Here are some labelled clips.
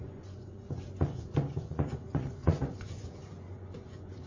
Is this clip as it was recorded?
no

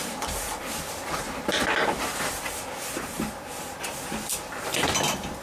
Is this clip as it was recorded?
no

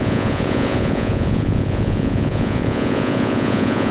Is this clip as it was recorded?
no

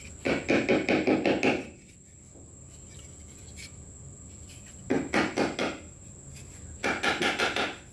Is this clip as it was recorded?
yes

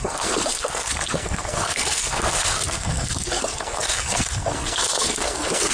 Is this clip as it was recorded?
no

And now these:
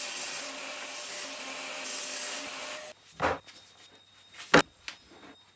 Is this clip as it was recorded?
yes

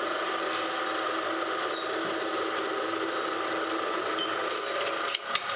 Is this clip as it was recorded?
yes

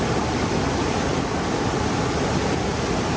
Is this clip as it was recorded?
yes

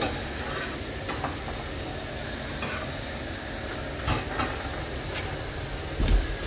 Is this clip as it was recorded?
yes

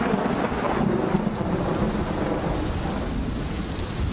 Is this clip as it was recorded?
yes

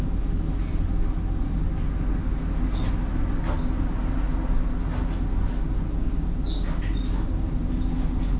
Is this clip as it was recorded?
yes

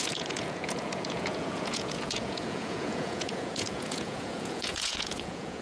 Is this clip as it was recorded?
no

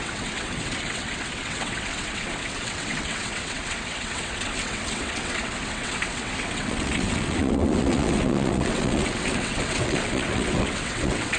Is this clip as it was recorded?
no